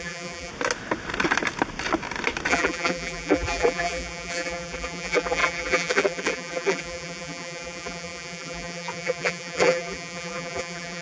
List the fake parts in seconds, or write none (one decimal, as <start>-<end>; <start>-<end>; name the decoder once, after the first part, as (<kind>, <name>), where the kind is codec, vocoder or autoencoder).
0.0-0.5 (vocoder, BigVGAN v2); 2.5-11.0